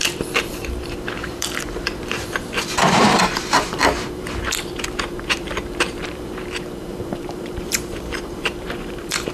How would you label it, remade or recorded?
remade